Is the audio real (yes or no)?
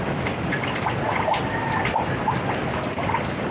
yes